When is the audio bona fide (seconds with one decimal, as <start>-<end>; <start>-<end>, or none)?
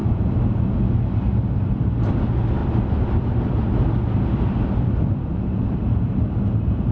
0.7-2.6; 6.1-6.9